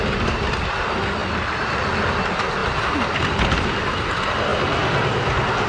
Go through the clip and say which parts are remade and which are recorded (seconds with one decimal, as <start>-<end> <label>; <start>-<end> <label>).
0.0-5.7 recorded